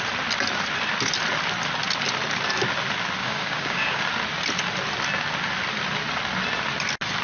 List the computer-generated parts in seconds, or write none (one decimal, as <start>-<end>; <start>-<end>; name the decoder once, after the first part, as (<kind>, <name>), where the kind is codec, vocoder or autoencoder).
3.2-4.0 (codec, DAC)